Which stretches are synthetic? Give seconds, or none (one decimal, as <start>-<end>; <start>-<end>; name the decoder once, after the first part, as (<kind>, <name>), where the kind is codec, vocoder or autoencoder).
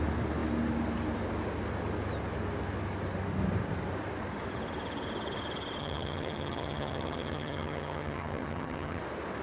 5.8-9.0 (vocoder, HiFi-GAN)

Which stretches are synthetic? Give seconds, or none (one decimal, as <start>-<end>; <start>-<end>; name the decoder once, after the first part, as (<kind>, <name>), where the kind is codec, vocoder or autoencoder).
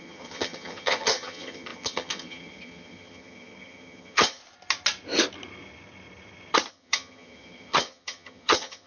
0.0-4.4 (vocoder, HiFi-GAN); 6.7-8.9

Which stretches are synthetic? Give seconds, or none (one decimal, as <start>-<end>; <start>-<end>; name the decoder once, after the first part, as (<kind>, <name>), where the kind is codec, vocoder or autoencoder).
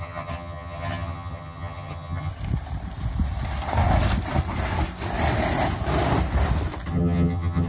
0.0-2.3 (vocoder, HiFi-GAN); 6.9-7.7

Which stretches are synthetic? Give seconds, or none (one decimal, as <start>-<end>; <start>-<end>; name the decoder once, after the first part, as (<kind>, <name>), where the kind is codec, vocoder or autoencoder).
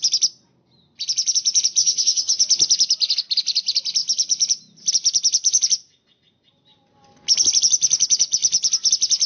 1.8-2.4 (vocoder, HiFi-GAN)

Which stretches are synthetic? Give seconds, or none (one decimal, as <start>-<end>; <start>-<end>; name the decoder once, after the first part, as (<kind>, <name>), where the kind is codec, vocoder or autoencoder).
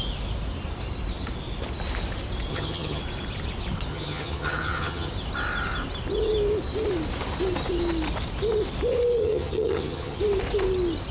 2.5-3.0 (vocoder, HiFi-GAN); 3.9-5.1; 9.2-10.2